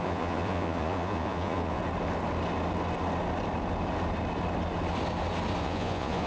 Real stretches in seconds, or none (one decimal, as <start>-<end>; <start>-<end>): 1.8-5.6